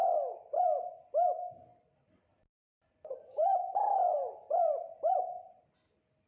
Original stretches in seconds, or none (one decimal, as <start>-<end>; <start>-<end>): 0.0-1.7; 5.5-6.3